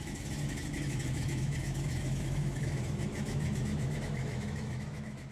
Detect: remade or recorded remade